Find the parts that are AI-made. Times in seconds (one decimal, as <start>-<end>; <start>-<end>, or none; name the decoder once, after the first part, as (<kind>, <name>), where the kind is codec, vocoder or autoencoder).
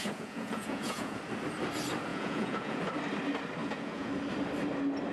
0.0-1.2 (vocoder, Vocos); 2.1-2.8; 3.6-4.1